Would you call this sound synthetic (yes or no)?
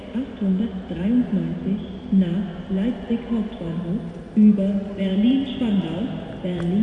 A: no